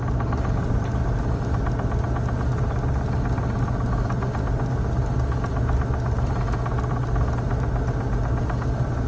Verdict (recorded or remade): recorded